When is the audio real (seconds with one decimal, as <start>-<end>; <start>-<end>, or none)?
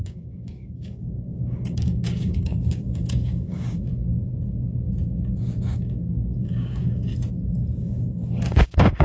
3.9-5.4; 7.1-7.8